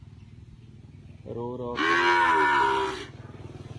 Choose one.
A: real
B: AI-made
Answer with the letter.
A